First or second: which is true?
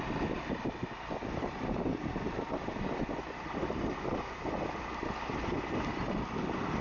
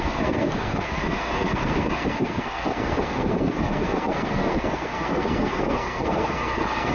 first